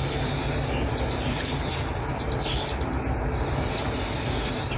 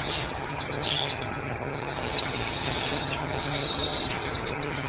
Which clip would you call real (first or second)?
first